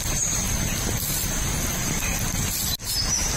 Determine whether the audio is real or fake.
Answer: real